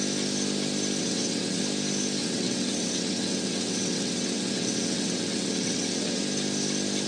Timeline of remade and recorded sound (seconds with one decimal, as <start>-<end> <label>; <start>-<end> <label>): 0.0-1.0 recorded; 1.0-1.6 remade; 1.6-2.2 recorded; 2.2-6.2 remade; 6.2-7.1 recorded